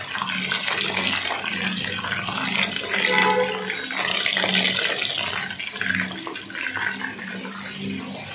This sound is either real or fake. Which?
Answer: real